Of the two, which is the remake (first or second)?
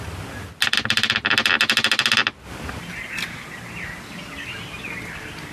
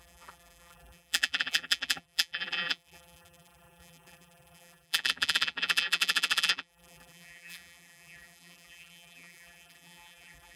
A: second